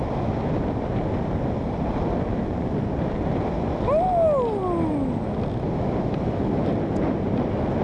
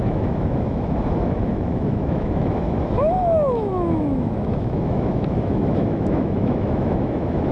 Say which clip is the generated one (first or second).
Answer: second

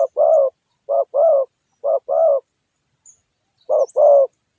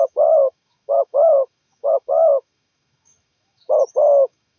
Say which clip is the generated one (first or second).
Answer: second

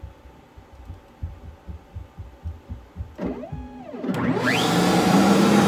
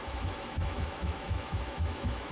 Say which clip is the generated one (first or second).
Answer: second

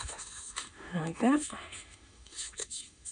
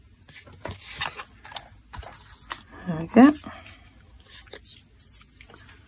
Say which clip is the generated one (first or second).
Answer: first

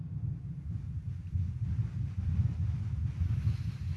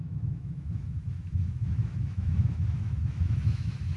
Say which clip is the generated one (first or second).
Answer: second